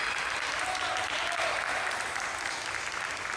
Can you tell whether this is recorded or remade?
recorded